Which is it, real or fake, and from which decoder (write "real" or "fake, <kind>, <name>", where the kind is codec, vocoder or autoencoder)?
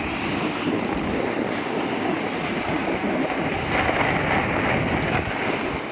real